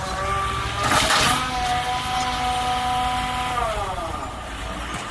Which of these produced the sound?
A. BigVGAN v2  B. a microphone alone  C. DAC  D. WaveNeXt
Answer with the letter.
B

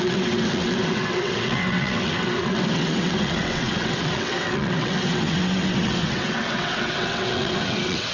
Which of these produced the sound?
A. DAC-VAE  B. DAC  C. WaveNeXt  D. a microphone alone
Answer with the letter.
C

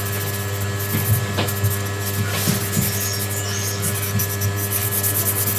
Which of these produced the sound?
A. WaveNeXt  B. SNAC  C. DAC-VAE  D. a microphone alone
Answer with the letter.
D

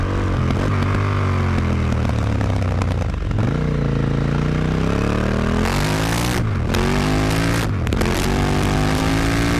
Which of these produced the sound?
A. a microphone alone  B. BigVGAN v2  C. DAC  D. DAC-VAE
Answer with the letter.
A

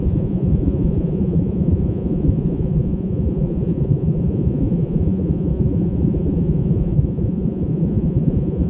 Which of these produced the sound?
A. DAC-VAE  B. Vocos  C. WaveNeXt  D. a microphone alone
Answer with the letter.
B